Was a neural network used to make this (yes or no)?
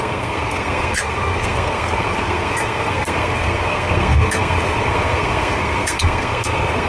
yes